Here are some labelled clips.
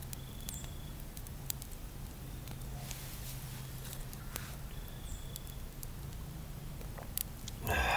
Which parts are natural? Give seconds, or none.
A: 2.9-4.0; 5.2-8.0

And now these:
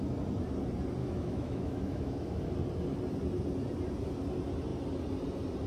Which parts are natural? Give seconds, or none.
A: 0.0-1.0; 2.5-5.7

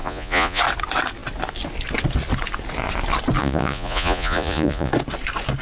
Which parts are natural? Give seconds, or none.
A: 0.6-3.4; 4.9-5.6

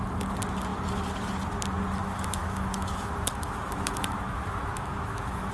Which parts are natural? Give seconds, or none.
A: 0.0-2.0

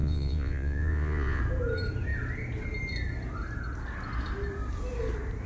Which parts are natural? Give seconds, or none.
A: 1.4-5.5